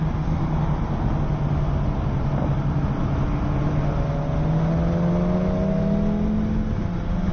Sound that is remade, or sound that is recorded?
recorded